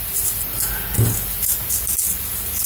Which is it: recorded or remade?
recorded